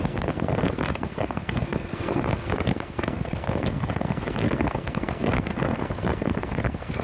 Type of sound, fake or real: fake